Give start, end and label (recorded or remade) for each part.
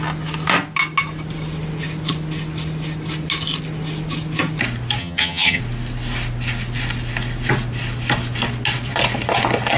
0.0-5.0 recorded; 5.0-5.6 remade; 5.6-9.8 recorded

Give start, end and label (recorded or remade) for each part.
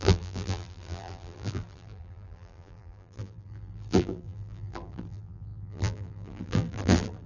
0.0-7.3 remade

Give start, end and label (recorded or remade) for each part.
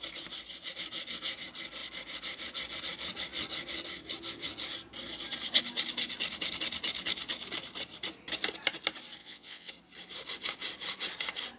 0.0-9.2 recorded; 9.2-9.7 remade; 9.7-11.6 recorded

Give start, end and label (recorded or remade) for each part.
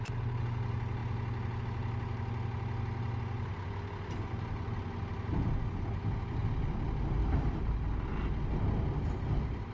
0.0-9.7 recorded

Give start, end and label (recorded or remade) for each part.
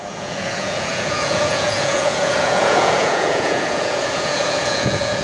0.0-5.2 remade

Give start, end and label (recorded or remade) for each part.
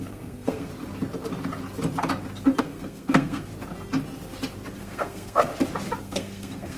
0.0-0.7 remade; 0.7-2.6 recorded; 2.6-3.5 remade; 3.5-4.8 recorded; 4.8-5.5 remade; 5.5-6.0 recorded; 6.0-6.8 remade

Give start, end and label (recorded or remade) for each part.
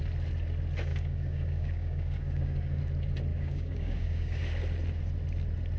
0.0-0.9 recorded; 0.9-2.8 remade; 2.8-3.3 recorded; 3.3-4.4 remade; 4.4-5.8 recorded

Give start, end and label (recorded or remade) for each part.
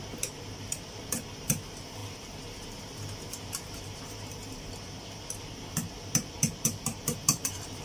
0.0-7.8 remade